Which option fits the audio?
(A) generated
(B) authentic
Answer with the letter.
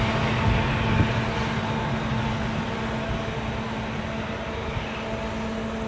B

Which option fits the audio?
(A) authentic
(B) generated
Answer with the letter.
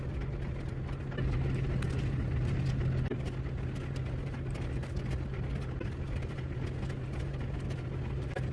A